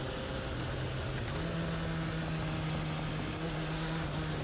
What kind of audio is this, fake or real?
real